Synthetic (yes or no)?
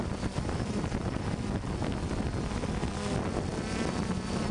no